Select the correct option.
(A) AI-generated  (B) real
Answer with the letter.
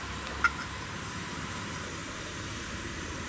A